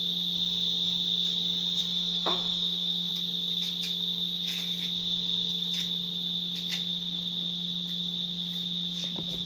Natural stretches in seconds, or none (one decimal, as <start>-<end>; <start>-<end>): 0.0-1.8; 3.1-9.5